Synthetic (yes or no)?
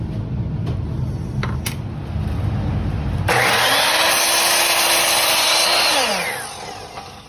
no